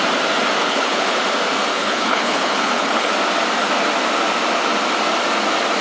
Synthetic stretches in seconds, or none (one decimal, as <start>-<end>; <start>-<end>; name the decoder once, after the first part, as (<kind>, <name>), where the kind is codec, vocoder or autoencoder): 0.6-1.2 (codec, HILCodec); 1.7-3.1